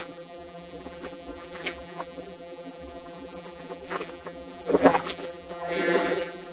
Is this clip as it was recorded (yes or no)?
no